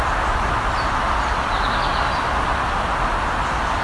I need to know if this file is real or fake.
real